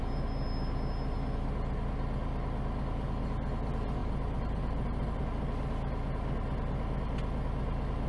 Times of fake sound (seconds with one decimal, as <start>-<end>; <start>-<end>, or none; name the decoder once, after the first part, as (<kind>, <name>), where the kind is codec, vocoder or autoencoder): 4.0-5.2 (vocoder, BigVGAN v2)